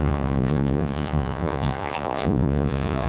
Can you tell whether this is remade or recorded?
remade